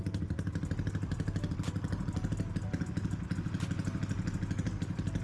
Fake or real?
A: real